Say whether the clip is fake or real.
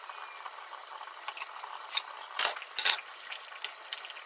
real